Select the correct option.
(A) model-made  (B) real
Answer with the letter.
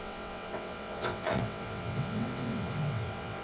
A